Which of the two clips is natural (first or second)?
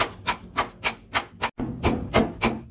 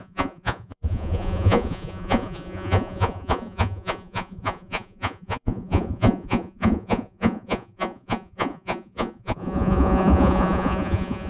first